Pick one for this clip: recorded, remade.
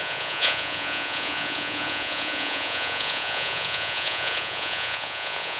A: remade